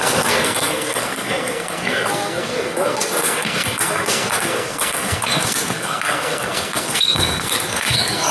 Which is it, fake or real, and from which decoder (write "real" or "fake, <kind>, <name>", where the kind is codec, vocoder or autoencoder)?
fake, codec, SNAC